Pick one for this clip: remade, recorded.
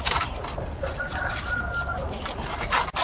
recorded